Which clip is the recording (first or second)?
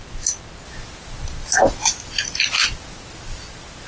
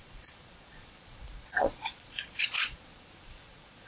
first